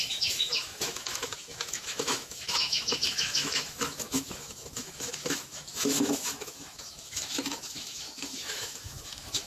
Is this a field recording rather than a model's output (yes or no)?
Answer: no